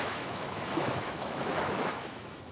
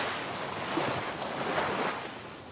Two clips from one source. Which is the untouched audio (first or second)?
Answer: second